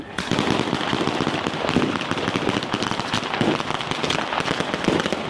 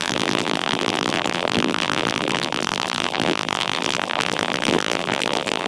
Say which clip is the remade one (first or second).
second